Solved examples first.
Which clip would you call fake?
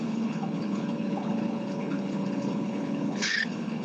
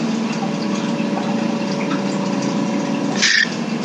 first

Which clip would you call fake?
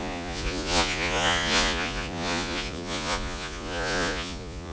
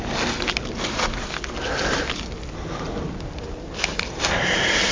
first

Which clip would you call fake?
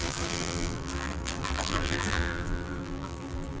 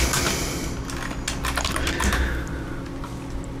first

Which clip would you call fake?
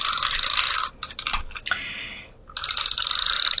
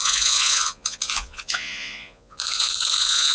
second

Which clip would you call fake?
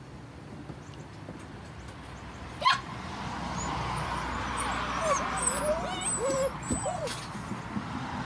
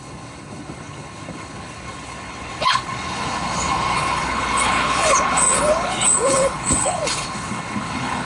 second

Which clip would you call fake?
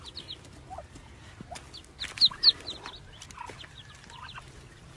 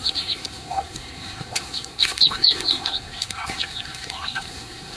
second